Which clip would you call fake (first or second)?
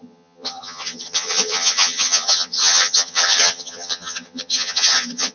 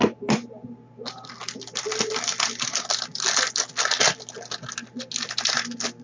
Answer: first